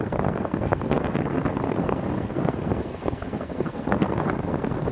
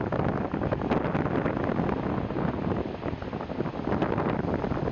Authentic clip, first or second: second